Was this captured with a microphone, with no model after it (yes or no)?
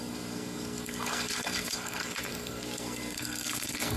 no